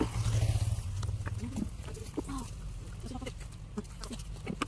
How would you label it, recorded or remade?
recorded